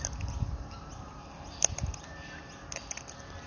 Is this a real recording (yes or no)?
yes